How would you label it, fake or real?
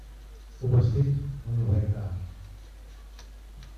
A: real